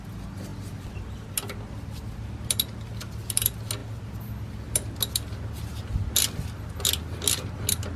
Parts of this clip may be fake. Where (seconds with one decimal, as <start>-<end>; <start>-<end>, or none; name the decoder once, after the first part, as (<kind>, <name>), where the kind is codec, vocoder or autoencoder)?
none